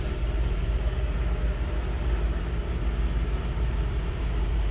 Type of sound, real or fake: fake